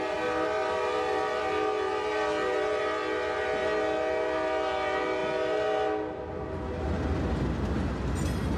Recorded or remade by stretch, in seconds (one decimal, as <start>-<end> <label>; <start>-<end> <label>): 0.0-8.6 recorded